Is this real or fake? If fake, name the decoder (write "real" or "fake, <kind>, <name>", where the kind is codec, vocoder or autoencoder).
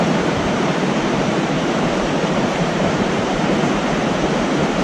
fake, vocoder, BigVGAN v2